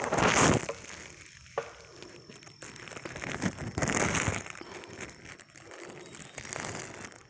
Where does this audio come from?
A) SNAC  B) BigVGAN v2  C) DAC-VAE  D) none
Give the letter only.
D